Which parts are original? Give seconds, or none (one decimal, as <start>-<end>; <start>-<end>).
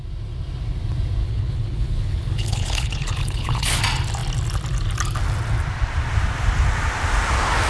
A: 0.0-1.2; 3.8-7.7